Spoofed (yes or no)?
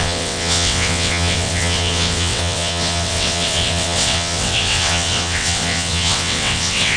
yes